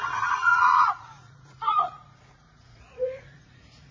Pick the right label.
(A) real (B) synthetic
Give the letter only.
B